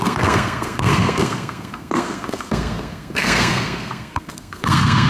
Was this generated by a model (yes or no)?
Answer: yes